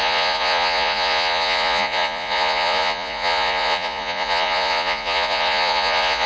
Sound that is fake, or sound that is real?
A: fake